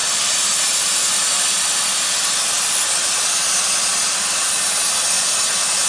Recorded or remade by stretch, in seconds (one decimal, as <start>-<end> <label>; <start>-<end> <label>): 0.0-5.9 recorded